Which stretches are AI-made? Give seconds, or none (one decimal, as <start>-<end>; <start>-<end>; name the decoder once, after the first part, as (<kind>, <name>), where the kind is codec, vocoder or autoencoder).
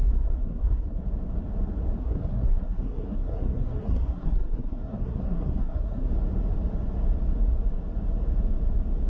0.0-1.0 (codec, SNAC); 2.0-6.1